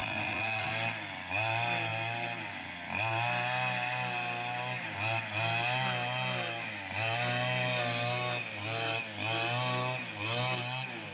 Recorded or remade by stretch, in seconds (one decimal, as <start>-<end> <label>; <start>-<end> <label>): 0.0-0.7 remade; 0.7-11.1 recorded